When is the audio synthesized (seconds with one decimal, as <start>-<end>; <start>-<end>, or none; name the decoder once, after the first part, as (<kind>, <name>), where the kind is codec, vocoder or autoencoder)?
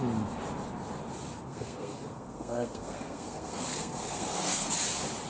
1.5-4.7 (codec, SNAC)